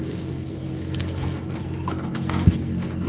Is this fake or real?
fake